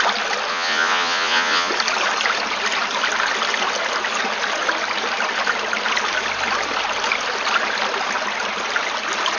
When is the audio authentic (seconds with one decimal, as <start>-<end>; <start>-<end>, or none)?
0.0-0.5; 1.7-9.4